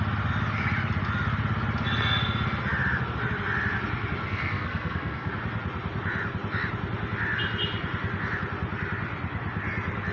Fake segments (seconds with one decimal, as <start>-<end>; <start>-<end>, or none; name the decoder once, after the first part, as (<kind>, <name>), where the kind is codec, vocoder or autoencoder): 4.3-5.3 (codec, SNAC)